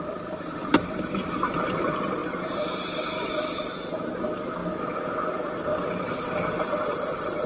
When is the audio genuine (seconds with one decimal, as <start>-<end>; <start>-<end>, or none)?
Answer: 4.6-5.3